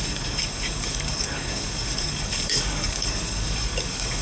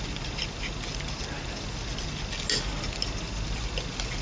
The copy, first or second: first